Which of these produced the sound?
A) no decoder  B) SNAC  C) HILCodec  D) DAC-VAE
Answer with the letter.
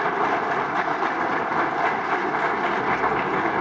A